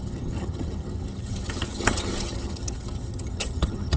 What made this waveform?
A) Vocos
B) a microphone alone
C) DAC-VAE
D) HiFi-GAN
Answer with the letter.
D